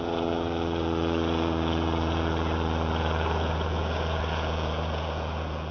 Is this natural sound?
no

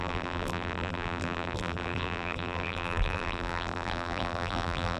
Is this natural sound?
no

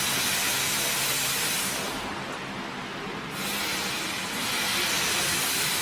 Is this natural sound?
yes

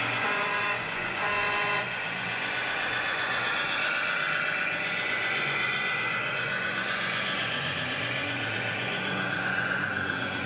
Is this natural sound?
no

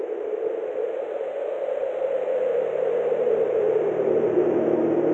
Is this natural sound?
yes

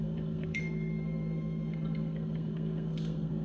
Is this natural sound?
no